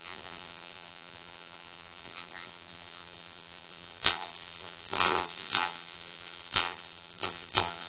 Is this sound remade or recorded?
remade